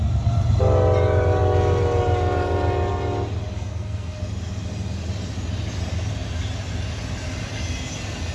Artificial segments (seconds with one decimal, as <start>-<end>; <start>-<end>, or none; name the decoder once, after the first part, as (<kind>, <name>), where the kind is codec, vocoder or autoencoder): 3.5-4.2 (codec, SNAC)